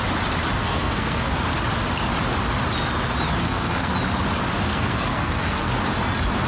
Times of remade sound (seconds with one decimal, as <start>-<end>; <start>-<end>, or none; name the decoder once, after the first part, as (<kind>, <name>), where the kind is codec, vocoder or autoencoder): 0.6-1.3 (codec, SNAC); 3.4-3.9; 4.7-5.7